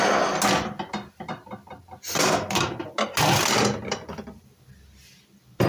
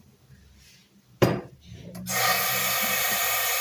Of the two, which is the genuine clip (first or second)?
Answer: first